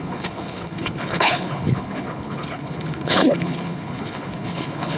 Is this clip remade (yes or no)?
yes